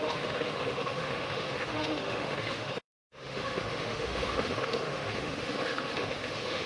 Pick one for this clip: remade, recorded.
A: remade